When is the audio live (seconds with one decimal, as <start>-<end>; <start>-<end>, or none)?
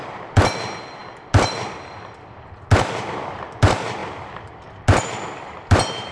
0.0-6.1